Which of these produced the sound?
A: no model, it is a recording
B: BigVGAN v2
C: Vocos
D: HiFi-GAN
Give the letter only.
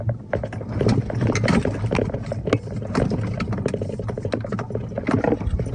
A